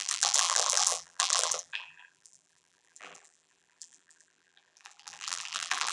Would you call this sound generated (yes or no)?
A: yes